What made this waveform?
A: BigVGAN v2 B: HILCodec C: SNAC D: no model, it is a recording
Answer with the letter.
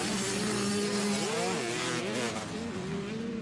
D